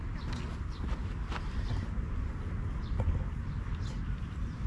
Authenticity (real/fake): fake